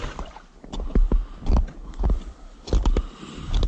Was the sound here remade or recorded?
recorded